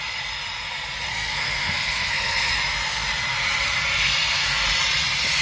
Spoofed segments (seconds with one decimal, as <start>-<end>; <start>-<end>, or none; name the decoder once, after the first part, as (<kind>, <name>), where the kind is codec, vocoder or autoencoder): 1.1-2.5 (codec, SNAC)